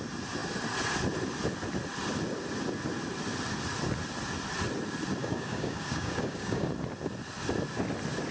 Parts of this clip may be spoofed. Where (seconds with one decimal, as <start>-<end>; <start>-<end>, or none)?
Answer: 5.2-6.7